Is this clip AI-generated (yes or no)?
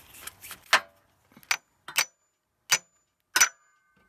no